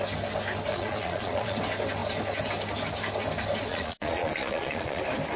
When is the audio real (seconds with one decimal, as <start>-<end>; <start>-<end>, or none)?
0.0-0.7; 1.6-3.7; 5.0-5.4